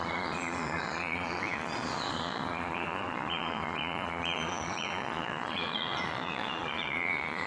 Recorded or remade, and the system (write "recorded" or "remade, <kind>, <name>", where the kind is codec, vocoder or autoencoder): remade, vocoder, Vocos